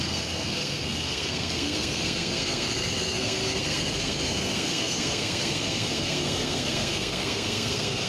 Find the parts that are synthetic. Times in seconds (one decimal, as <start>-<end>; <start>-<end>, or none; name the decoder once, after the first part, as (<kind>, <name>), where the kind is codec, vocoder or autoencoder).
0.0-8.1 (codec, SNAC)

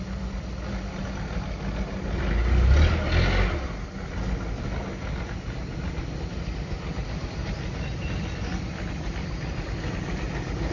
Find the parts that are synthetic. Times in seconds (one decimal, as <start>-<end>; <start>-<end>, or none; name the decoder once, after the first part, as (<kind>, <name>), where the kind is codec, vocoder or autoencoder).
none

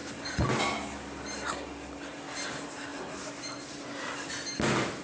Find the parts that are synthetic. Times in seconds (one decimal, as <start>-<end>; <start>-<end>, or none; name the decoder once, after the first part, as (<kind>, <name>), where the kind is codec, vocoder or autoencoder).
none

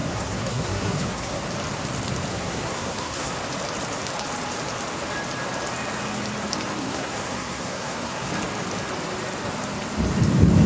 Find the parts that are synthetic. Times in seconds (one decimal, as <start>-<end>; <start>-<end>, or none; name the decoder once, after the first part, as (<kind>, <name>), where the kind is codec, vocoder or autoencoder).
0.0-1.4 (codec, SNAC); 2.3-3.3; 6.8-8.3

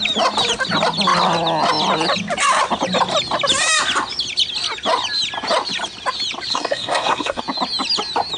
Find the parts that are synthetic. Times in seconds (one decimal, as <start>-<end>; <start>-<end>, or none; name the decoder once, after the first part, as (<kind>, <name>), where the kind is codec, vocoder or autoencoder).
6.5-7.4 (codec, SNAC)

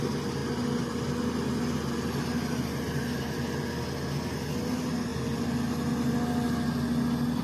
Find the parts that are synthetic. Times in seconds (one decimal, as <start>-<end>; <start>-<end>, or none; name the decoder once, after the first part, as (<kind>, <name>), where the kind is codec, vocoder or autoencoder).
none

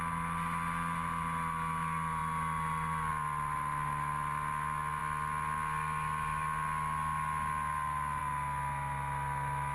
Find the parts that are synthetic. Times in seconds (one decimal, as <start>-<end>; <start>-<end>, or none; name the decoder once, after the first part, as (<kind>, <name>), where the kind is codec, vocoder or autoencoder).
none